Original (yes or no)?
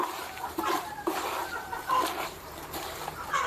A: no